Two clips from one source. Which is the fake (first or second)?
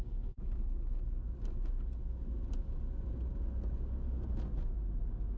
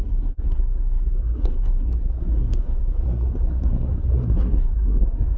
second